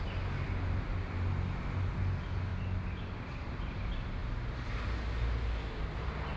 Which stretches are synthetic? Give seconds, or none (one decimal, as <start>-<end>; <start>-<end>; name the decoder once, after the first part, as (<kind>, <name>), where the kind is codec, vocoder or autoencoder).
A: none